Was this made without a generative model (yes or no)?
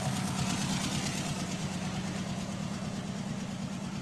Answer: yes